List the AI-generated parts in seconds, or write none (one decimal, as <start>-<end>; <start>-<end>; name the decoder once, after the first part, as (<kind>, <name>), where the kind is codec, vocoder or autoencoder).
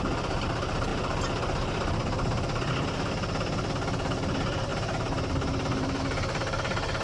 4.7-6.0 (vocoder, BigVGAN v2)